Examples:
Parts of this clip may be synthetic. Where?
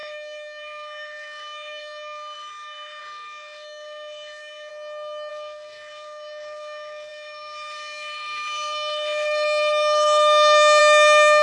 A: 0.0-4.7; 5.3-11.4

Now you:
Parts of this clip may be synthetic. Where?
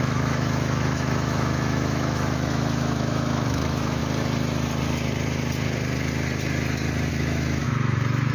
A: 0.0-4.0; 7.1-8.3